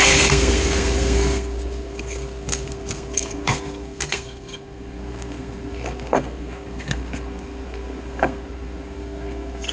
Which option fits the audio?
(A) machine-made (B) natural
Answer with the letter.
A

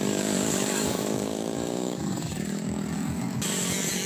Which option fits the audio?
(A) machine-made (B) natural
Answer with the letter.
A